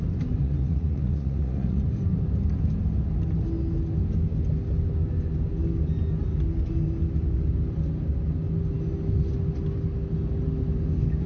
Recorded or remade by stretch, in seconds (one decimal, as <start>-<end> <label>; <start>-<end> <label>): 0.0-0.4 recorded; 0.4-1.8 remade; 1.8-11.3 recorded